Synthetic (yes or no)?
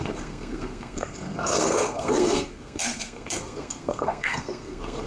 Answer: yes